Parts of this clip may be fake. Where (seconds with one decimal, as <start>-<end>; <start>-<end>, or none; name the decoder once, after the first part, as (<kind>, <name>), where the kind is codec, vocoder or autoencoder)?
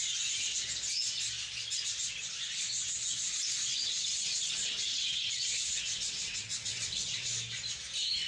3.7-7.3 (vocoder, WaveNeXt)